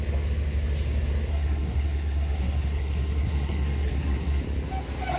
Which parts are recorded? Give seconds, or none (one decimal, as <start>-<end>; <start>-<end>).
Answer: 0.0-1.3; 4.4-5.2